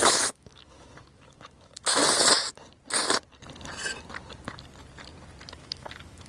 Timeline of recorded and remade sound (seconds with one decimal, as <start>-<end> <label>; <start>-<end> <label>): 0.0-2.0 remade; 2.0-5.5 recorded; 5.5-6.3 remade